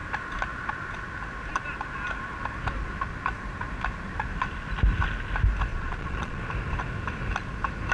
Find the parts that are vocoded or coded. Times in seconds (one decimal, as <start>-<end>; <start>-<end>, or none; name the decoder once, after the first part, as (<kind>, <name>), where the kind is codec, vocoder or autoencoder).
5.7-6.4 (vocoder, Vocos)

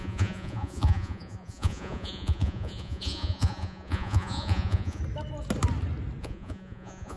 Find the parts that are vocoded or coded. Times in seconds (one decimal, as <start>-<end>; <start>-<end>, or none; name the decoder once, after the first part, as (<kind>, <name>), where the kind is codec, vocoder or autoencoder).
0.0-5.0 (vocoder, Vocos); 6.2-7.2